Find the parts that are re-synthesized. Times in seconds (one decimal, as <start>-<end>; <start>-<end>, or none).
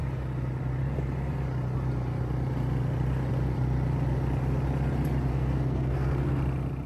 5.3-6.4